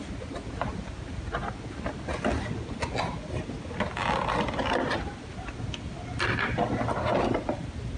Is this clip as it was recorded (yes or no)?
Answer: yes